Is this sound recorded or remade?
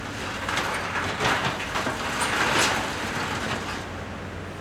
recorded